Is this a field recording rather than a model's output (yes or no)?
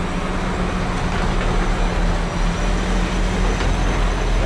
yes